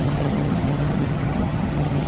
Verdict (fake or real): fake